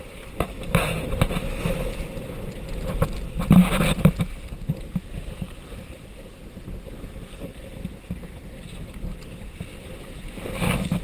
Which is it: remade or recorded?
recorded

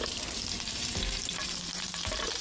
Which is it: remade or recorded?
remade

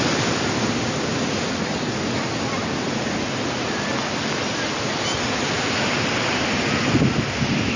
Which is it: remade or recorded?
recorded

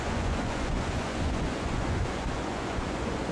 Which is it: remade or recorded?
remade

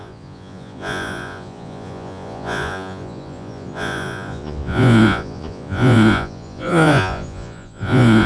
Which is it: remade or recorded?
remade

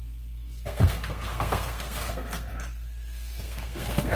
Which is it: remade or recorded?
remade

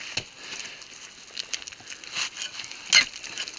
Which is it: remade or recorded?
recorded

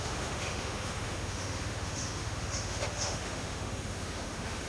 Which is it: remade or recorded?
remade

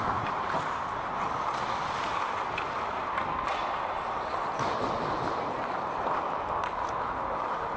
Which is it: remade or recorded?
recorded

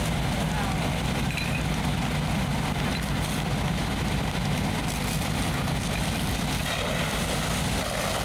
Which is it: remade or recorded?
recorded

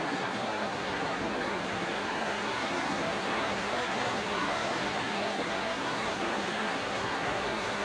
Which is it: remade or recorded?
remade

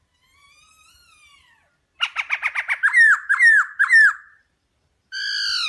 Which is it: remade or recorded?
recorded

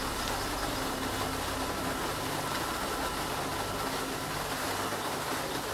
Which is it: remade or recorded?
recorded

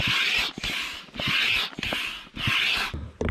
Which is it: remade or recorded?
recorded